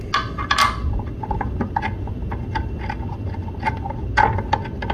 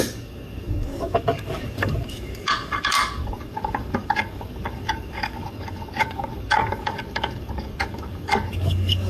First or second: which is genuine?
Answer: first